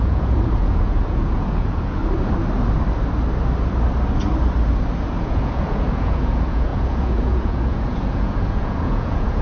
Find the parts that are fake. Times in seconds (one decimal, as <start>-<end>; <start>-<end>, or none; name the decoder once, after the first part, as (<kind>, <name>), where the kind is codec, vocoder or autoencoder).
0.0-2.0 (vocoder, Vocos); 5.2-9.4